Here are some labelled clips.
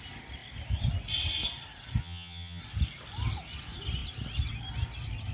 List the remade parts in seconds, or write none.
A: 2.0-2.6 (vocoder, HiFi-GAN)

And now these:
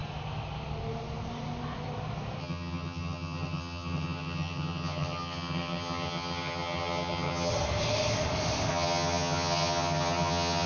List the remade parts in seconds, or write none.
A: 2.4-7.5 (vocoder, HiFi-GAN); 8.7-10.7

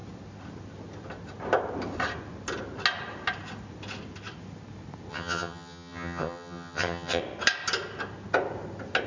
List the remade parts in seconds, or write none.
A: 5.1-7.2 (vocoder, HiFi-GAN)

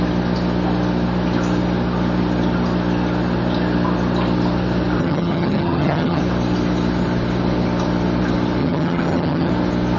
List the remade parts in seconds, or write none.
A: 5.0-6.2 (vocoder, HiFi-GAN); 8.6-9.5